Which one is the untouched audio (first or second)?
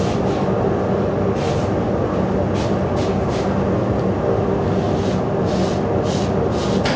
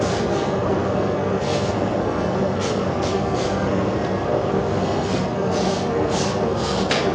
first